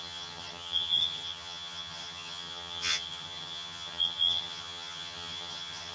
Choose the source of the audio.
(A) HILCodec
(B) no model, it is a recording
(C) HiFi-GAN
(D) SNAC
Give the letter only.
C